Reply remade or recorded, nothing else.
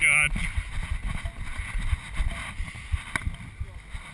recorded